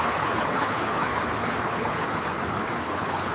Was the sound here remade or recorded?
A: remade